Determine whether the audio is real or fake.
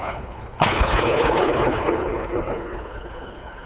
fake